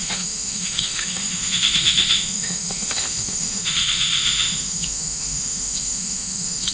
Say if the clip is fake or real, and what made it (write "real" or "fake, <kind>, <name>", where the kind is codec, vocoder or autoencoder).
fake, autoencoder, DAC-VAE